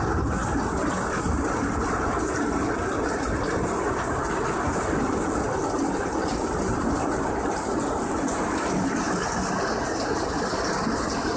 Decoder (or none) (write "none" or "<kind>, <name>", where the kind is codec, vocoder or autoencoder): none